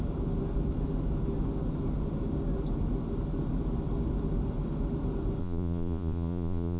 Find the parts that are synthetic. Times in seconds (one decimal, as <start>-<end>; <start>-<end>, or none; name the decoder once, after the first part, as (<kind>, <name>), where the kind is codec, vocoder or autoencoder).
5.4-6.8 (vocoder, Vocos)